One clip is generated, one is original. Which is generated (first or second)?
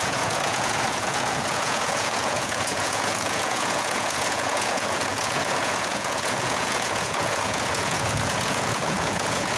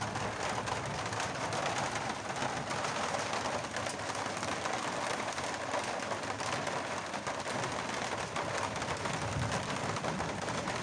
first